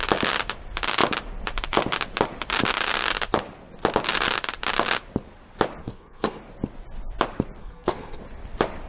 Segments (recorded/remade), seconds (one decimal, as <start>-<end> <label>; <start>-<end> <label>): 0.0-5.8 recorded; 5.8-6.4 remade; 6.4-7.6 recorded; 7.6-8.2 remade; 8.2-8.9 recorded